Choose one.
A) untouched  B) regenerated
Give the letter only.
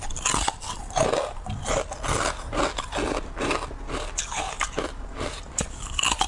A